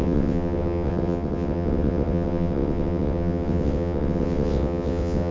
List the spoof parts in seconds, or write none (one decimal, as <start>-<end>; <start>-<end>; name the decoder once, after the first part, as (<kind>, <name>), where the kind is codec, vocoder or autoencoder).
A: 0.0-5.3 (vocoder, WaveNeXt)